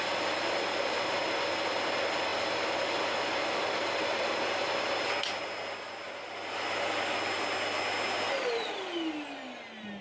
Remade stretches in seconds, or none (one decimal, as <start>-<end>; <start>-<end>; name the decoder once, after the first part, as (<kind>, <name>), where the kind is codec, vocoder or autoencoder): none